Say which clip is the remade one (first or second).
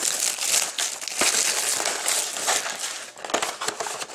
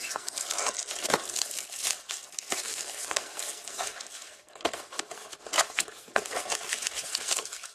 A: second